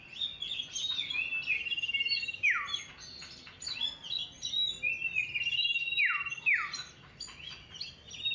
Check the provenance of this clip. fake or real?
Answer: real